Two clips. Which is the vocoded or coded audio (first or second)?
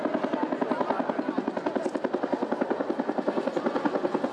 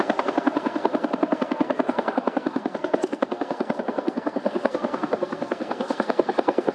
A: second